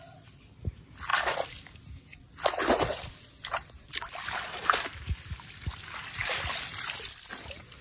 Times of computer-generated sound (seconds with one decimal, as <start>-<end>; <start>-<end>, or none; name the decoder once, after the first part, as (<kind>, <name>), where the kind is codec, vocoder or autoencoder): none

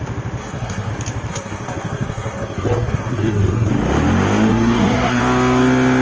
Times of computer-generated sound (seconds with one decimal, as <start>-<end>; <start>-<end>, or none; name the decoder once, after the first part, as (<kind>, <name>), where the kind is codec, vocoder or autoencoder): 0.4-0.9 (codec, SNAC); 1.3-3.7; 4.5-5.2